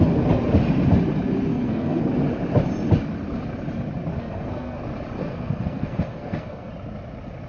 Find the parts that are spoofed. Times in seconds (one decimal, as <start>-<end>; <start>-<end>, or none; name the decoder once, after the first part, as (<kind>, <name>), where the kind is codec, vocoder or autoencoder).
1.5-2.0 (codec, SNAC); 4.1-4.8; 5.2-6.7